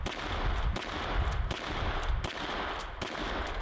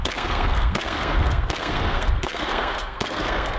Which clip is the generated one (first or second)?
second